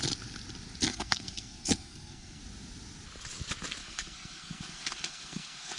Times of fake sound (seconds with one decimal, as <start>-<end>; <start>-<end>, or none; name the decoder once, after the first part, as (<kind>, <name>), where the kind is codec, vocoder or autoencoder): 0.9-2.4 (codec, SNAC); 3.8-5.8